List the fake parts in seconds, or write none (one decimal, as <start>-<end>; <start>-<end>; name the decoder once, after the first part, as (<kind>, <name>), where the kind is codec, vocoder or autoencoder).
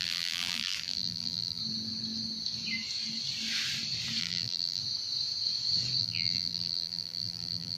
0.0-1.6 (vocoder, BigVGAN v2); 4.2-4.8; 6.0-7.8